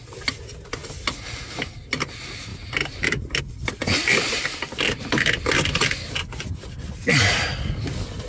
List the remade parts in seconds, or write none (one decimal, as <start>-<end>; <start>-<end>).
2.5-3.4